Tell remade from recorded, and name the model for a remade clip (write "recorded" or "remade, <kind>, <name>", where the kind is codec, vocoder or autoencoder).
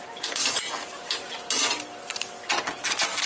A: recorded